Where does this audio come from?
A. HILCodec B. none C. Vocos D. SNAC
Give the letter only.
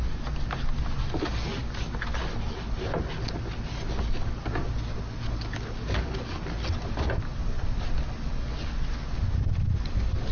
B